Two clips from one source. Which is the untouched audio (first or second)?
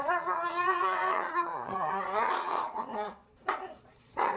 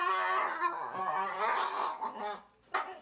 second